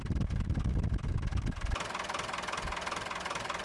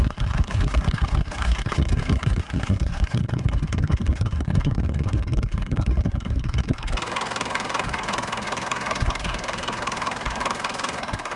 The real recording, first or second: first